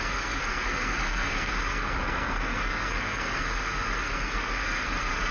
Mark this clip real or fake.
fake